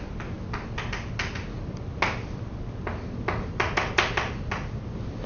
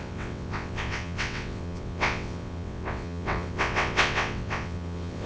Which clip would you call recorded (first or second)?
first